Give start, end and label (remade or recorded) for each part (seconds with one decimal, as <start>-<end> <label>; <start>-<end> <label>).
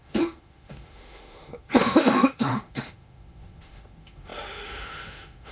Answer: 0.0-5.5 remade